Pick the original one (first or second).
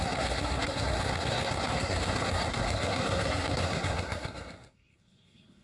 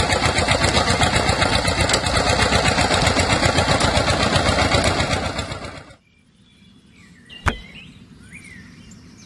second